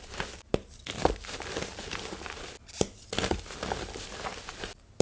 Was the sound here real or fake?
real